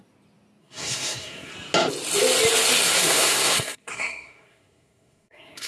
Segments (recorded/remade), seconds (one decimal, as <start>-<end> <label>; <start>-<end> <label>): 0.0-0.6 recorded; 0.6-1.5 remade; 1.5-3.0 recorded; 3.0-5.7 remade